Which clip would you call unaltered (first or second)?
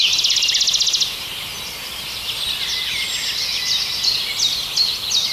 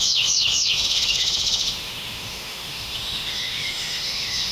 first